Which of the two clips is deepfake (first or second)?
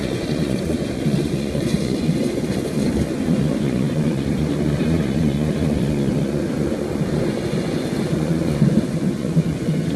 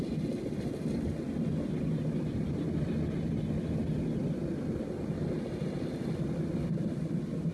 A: first